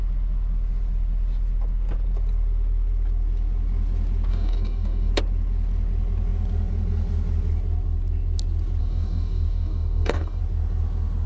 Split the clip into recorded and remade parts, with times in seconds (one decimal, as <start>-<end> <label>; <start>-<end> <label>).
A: 0.0-4.3 recorded; 4.3-5.1 remade; 5.1-8.8 recorded; 8.8-10.4 remade; 10.4-11.3 recorded